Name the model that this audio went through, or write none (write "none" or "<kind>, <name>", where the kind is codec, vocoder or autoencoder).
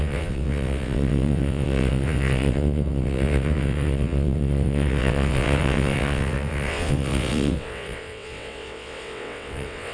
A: vocoder, WaveNeXt